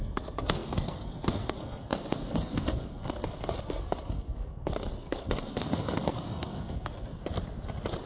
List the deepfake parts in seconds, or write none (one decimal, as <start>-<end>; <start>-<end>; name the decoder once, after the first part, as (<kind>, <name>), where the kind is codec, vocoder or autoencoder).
0.0-7.2 (codec, SNAC)